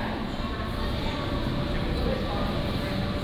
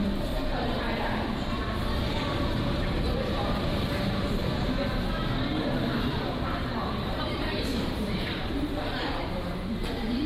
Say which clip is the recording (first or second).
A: first